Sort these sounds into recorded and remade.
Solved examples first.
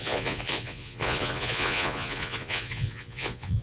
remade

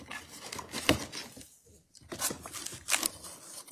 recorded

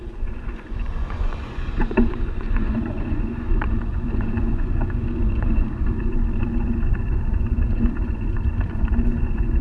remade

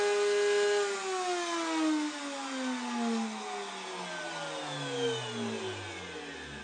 recorded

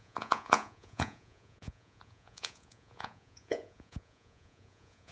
remade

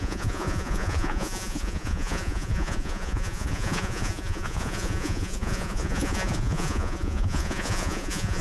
remade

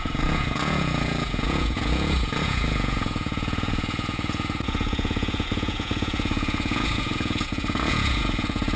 remade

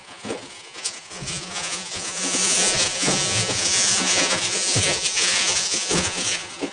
remade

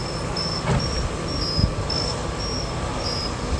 recorded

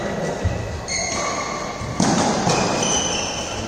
recorded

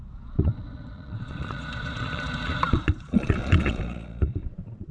remade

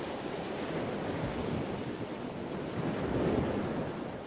recorded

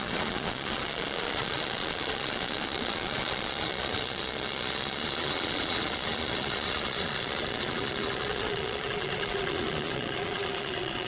remade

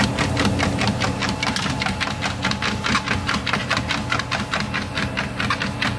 recorded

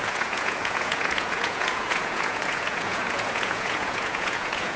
remade